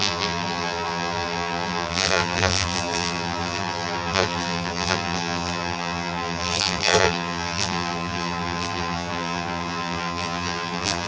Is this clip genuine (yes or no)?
no